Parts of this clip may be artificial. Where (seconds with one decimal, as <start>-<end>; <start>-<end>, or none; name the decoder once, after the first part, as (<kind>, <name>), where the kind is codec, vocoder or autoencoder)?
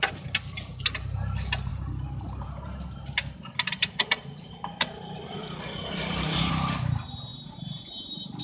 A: 1.7-6.5 (vocoder, BigVGAN v2); 7.3-8.4